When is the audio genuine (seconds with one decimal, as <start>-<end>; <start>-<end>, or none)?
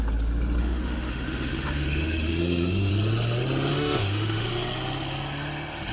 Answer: 0.0-0.6; 2.9-3.7; 4.5-5.9